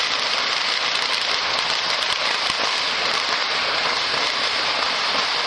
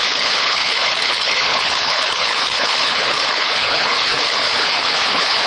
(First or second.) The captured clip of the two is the first